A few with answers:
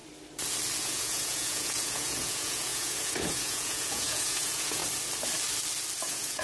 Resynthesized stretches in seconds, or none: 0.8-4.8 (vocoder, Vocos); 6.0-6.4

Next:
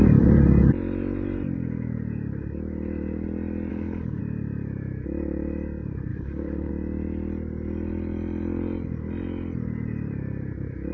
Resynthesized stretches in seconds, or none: 3.7-4.2 (codec, HILCodec); 6.1-6.7

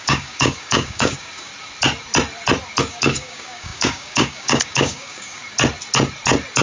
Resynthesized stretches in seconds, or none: 0.0-1.5 (codec, DAC); 2.8-5.4

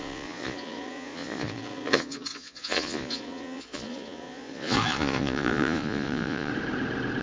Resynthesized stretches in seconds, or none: 0.0-6.5 (vocoder, Vocos)

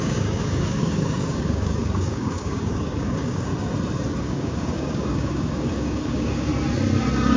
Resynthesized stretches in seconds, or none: 0.0-3.5 (codec, DAC); 4.2-6.5

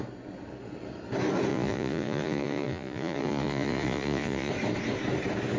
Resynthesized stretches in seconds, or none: 1.5-4.5 (vocoder, Vocos)

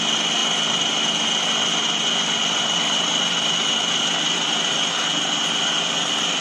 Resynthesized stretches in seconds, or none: none